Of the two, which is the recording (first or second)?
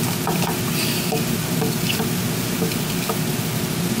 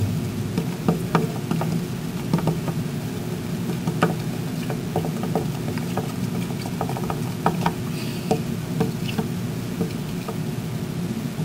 second